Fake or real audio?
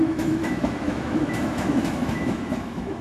fake